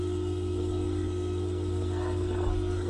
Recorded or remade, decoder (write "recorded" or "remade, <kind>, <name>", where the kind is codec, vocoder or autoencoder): remade, codec, SNAC